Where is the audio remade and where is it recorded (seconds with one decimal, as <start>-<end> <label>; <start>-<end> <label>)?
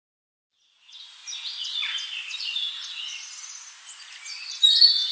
0.0-5.1 recorded